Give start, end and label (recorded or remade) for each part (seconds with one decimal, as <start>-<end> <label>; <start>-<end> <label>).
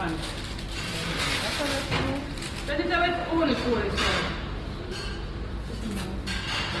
0.0-3.2 recorded; 3.2-4.2 remade; 4.2-6.8 recorded